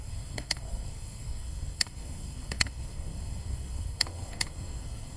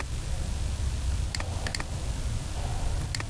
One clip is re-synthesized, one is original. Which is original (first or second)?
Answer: second